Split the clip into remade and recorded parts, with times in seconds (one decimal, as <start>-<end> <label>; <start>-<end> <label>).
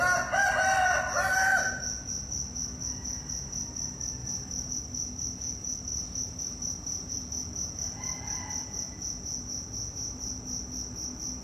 0.0-4.2 recorded; 4.2-4.7 remade; 4.7-5.9 recorded; 5.9-7.1 remade; 7.1-11.4 recorded